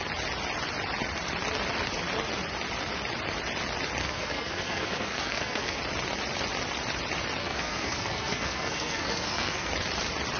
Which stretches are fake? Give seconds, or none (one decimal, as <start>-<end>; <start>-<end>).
4.0-5.8; 7.4-9.7